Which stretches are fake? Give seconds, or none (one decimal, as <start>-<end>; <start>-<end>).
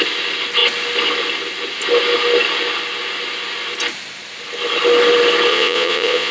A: 5.5-6.3